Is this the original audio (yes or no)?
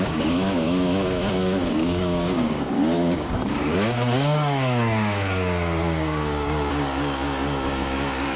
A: no